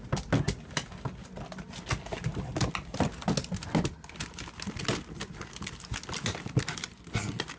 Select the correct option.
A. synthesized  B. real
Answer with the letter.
B